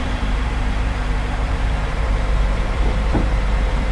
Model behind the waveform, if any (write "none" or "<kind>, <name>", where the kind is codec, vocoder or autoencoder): vocoder, BigVGAN v2